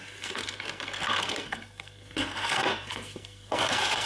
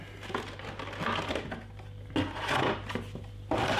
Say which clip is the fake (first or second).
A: first